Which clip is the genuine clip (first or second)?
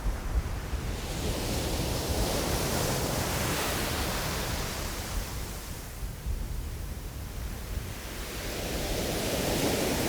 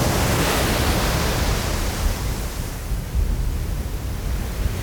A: second